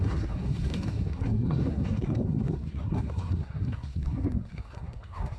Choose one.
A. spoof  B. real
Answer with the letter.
A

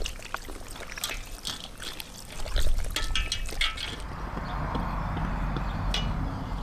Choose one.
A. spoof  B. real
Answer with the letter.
B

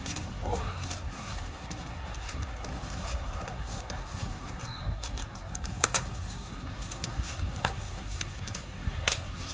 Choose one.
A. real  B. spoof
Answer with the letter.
B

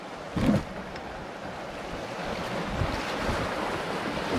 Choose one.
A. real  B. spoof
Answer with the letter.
A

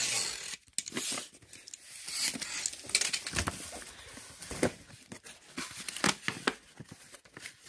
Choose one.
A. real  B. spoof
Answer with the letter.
A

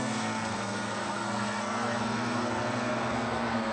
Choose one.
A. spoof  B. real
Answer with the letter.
A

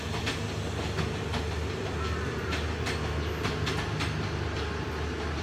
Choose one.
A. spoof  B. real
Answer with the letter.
B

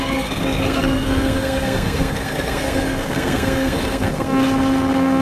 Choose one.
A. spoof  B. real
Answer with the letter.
A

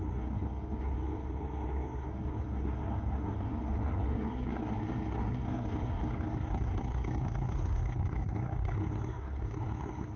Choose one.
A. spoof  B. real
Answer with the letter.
A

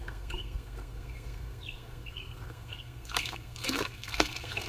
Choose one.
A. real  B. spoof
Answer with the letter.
B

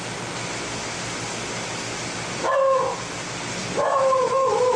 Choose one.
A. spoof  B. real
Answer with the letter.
B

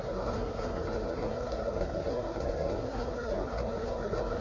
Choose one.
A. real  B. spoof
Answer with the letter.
B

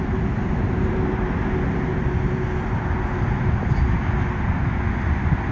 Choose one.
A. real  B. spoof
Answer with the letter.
A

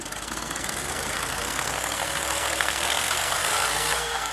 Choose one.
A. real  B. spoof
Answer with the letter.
B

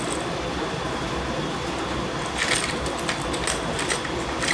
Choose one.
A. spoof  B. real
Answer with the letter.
B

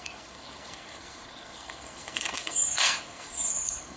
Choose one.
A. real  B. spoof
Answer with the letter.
B